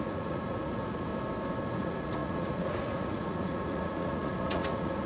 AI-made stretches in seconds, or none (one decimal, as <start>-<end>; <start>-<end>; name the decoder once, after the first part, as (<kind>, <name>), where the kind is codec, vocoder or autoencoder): 0.0-1.1 (vocoder, Vocos); 1.7-5.1